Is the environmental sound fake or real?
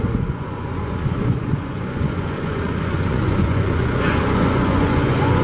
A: fake